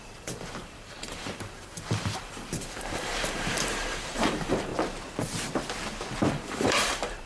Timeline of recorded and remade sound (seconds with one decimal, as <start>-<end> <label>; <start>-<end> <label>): 0.0-4.7 remade; 4.7-6.3 recorded; 6.3-7.3 remade